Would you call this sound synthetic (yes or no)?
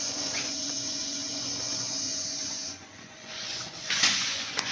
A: yes